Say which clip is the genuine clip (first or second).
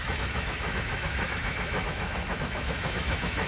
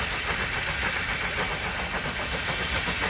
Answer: second